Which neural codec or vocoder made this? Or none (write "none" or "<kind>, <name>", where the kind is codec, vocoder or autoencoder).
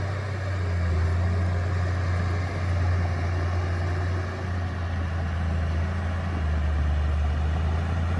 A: none